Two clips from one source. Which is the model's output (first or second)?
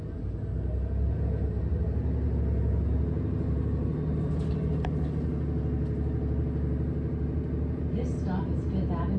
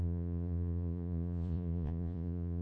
second